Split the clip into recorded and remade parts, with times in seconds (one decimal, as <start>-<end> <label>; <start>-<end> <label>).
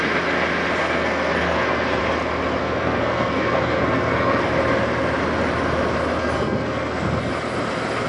0.0-0.8 recorded; 0.8-2.0 remade; 2.0-2.6 recorded; 2.6-4.5 remade; 4.5-6.2 recorded; 6.2-7.3 remade; 7.3-8.1 recorded